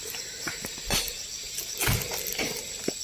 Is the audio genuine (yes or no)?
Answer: yes